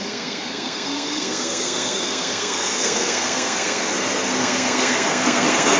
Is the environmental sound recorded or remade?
remade